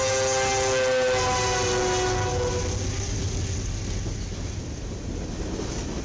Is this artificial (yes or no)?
no